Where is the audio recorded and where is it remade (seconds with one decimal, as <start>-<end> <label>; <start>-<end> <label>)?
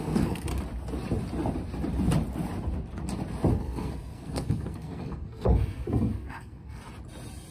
0.0-0.5 remade; 0.5-3.5 recorded; 3.5-6.8 remade; 6.8-7.5 recorded